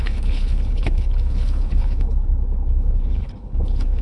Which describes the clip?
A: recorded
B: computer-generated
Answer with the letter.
B